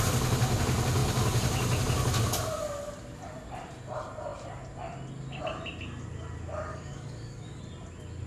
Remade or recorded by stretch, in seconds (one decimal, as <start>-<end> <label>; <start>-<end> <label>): 0.0-6.7 recorded; 6.7-7.6 remade; 7.6-8.3 recorded